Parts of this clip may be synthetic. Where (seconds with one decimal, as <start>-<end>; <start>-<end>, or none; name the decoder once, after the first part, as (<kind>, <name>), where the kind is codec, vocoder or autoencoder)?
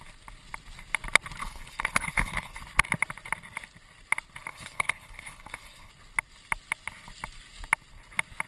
1.4-2.6 (codec, HILCodec); 4.5-5.9